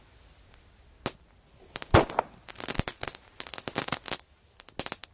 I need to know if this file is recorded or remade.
recorded